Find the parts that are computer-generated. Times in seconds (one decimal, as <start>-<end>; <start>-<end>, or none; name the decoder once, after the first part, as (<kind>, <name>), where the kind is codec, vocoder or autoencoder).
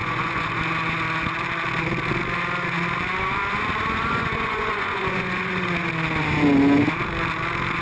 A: 0.0-0.6 (vocoder, Vocos); 4.1-5.9